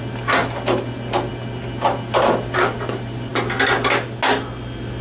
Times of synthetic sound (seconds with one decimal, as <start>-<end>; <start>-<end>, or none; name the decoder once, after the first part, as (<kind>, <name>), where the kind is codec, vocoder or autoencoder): none